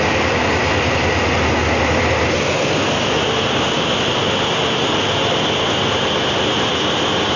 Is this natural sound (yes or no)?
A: yes